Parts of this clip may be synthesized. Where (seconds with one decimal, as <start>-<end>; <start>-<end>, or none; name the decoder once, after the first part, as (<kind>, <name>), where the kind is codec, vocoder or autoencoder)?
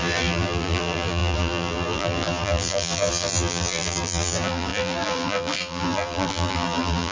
0.0-7.1 (vocoder, BigVGAN v2)